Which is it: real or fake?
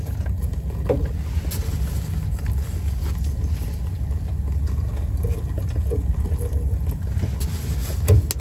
real